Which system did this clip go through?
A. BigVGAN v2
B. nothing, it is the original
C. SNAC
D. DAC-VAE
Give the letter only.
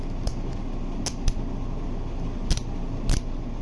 B